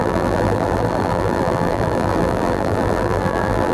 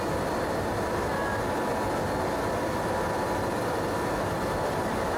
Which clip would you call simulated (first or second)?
first